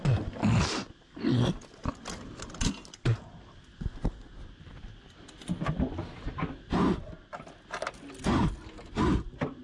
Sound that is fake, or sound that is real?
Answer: real